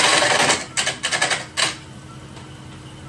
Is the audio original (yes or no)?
yes